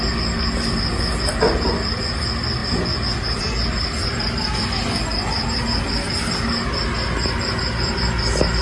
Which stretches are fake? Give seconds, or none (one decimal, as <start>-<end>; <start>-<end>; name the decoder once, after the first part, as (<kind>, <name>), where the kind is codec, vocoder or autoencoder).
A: none